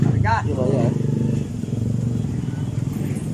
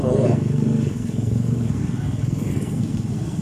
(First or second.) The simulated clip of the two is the second